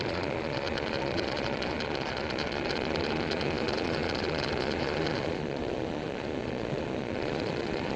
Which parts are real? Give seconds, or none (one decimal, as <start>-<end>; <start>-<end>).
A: none